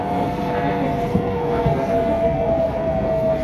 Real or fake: fake